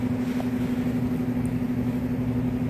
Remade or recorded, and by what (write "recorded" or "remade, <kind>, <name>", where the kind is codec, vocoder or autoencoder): recorded